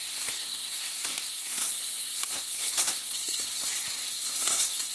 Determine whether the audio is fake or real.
fake